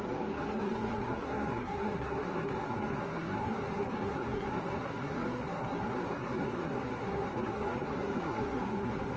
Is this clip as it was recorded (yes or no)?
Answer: no